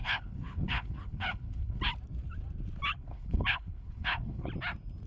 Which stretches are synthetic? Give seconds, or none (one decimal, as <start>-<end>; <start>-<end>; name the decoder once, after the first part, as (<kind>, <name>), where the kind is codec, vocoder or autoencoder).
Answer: 0.0-1.8 (codec, HILCodec); 2.9-4.5